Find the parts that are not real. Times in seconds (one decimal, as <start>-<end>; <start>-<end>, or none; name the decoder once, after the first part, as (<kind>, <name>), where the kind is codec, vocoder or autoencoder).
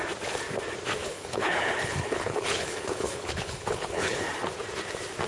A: 1.0-4.2 (codec, HILCodec)